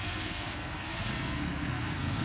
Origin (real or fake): fake